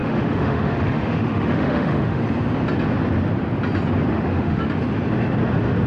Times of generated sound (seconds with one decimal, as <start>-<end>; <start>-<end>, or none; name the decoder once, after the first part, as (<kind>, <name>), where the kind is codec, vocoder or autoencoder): 0.0-2.2 (autoencoder, DAC-VAE); 4.1-4.6